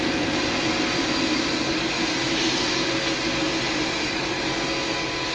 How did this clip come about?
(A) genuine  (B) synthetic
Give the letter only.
A